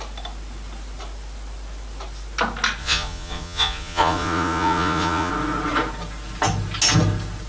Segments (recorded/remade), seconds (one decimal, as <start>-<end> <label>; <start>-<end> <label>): 0.0-2.8 recorded; 2.8-5.3 remade; 5.3-7.5 recorded